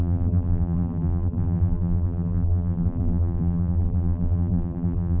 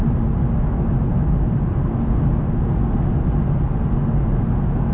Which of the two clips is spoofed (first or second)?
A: first